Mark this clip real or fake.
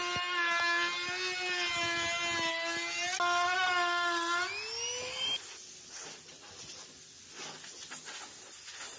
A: real